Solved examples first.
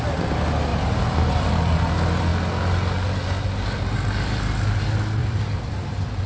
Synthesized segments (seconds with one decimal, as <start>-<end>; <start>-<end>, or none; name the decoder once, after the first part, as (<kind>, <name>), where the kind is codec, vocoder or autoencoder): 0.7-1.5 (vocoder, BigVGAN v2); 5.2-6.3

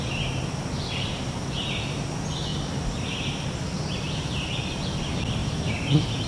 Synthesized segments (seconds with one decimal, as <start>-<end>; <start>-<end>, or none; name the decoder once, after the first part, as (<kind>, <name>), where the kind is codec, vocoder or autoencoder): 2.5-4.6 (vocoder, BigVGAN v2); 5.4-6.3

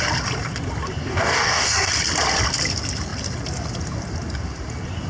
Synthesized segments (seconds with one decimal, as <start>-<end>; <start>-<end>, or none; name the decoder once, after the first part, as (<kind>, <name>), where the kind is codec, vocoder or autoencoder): 1.0-1.9 (codec, DAC)

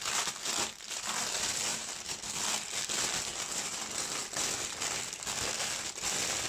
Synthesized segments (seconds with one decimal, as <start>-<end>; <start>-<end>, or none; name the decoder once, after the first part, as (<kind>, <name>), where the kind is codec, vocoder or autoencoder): 1.7-2.4 (vocoder, BigVGAN v2); 3.3-4.0